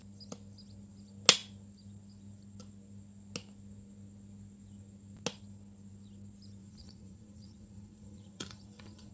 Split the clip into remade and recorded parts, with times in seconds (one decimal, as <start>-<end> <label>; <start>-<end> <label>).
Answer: 0.0-6.6 recorded; 6.6-9.1 remade